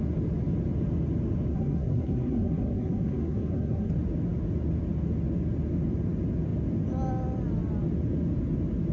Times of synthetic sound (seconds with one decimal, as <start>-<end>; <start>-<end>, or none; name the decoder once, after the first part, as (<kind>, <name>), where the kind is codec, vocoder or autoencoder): 1.5-3.9 (codec, SNAC)

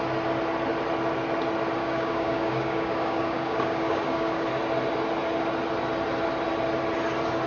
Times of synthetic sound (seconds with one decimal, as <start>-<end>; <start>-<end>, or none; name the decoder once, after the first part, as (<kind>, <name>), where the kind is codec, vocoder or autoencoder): 1.8-4.5 (codec, DAC)

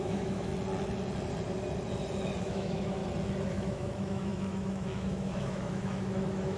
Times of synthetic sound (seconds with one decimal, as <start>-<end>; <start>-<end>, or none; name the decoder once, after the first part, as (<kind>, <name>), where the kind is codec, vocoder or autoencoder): 0.0-0.5 (autoencoder, DAC-VAE); 2.4-3.0; 3.5-6.6

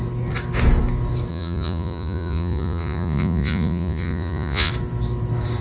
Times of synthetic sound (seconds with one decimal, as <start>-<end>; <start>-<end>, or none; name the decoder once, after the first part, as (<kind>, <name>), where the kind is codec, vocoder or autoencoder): 1.3-4.7 (vocoder, Vocos)

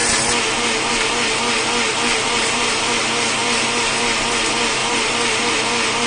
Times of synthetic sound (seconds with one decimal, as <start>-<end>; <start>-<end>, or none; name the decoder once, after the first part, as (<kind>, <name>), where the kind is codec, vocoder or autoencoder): 1.9-3.0 (vocoder, BigVGAN v2); 4.8-5.4

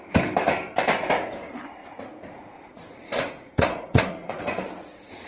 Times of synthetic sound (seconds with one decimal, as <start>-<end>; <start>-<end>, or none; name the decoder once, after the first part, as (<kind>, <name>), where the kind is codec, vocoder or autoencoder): 1.8-5.3 (vocoder, Vocos)